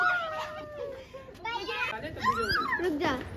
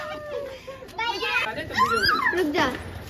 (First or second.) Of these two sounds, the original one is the first